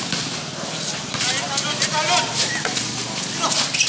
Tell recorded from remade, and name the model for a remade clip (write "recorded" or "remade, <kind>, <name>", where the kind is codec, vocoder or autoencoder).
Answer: recorded